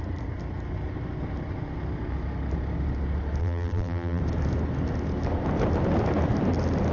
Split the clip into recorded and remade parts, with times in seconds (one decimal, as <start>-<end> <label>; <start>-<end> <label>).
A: 0.0-3.4 recorded; 3.4-4.2 remade; 4.2-6.9 recorded